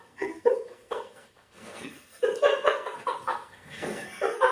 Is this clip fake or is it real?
fake